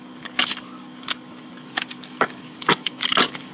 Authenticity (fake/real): fake